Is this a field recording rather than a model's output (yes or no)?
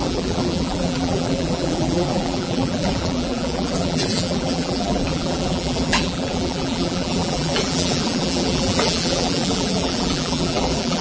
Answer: no